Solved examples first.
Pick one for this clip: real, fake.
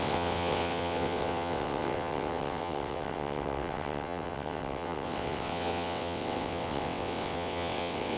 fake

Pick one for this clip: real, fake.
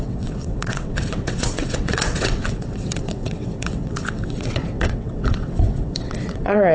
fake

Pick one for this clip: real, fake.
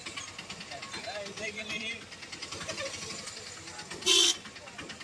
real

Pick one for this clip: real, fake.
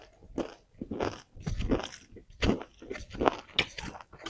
real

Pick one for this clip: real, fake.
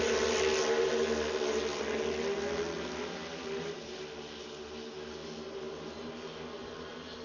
real